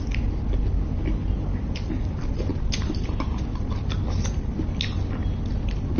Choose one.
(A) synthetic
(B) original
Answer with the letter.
B